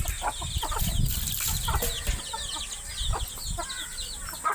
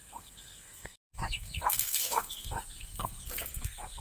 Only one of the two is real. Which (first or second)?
first